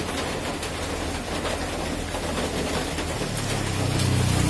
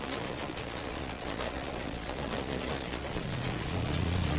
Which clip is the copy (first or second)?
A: second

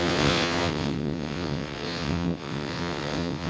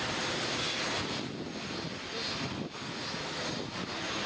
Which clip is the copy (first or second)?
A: first